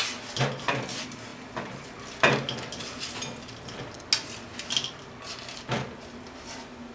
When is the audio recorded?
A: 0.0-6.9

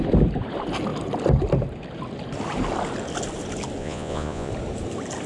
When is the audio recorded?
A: 0.0-3.8; 4.5-5.3

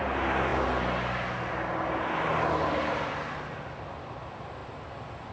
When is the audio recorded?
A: 0.0-5.3

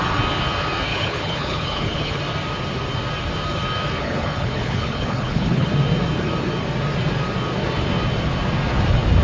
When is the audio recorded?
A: 0.0-0.9; 2.2-4.0; 5.7-9.2

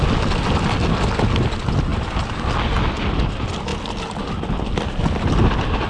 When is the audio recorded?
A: 0.0-5.9

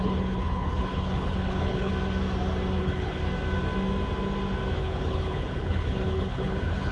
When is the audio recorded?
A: 1.9-2.8; 3.2-4.8

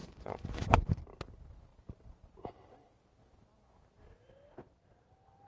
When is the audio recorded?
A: 1.0-5.5

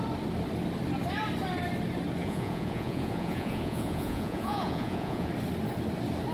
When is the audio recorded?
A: 0.0-2.2; 5.3-6.3